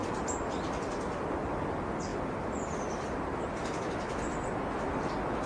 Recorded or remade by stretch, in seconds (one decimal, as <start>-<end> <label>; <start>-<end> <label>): 0.0-5.5 recorded